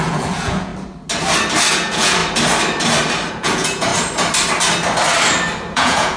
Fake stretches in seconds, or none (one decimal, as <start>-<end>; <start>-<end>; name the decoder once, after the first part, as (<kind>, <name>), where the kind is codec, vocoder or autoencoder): 0.0-0.7 (vocoder, Vocos); 1.7-2.2; 3.3-3.9; 5.7-6.2